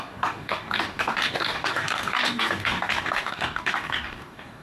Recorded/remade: remade